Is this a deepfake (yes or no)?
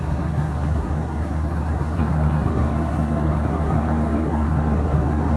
yes